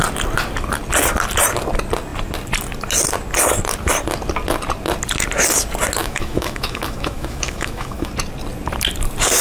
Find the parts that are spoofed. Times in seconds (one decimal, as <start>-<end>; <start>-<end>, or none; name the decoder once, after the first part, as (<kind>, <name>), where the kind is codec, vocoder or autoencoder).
6.0-8.1 (autoencoder, DAC-VAE)